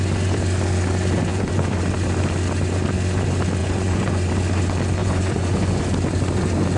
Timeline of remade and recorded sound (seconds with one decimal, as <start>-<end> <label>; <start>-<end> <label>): 0.0-1.3 recorded; 1.3-1.8 remade; 1.8-3.6 recorded; 3.6-4.3 remade; 4.3-5.0 recorded; 5.0-5.8 remade; 5.8-6.8 recorded